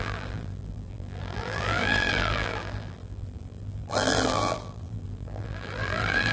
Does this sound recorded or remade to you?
remade